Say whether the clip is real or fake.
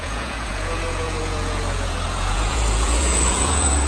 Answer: fake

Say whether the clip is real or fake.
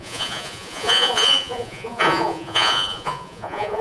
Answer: fake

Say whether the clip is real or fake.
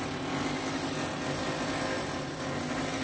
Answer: real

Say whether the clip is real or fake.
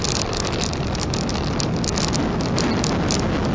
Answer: real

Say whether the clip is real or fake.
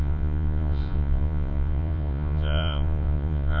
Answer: fake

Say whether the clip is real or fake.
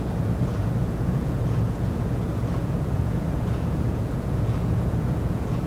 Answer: fake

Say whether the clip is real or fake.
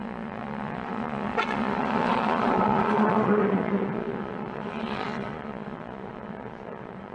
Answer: fake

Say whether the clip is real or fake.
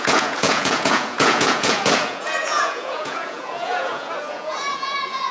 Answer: fake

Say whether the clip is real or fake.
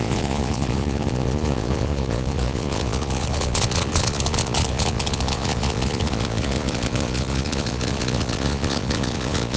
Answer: fake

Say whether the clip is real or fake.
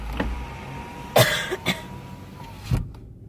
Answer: real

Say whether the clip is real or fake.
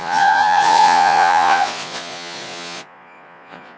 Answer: fake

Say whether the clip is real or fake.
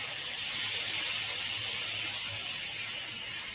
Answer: real